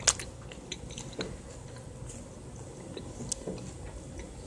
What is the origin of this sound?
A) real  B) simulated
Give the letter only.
A